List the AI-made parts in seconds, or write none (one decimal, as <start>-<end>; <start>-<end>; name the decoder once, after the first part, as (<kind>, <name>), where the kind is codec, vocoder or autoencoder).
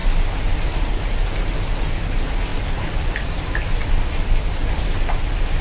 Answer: 0.0-1.0 (vocoder, BigVGAN v2); 2.5-3.9